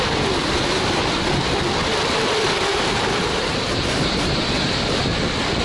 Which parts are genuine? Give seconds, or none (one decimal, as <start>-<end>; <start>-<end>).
0.0-3.2; 5.0-5.6